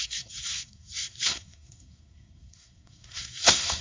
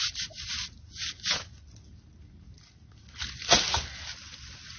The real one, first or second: second